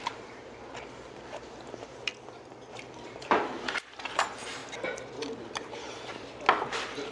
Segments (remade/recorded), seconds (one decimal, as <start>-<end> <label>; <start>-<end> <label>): 0.0-2.1 remade; 2.1-2.7 recorded; 2.7-4.6 remade; 4.6-5.4 recorded; 5.4-6.1 remade; 6.1-7.1 recorded